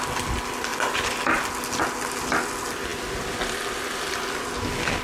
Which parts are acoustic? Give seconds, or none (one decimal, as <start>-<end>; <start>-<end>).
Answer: 0.0-5.0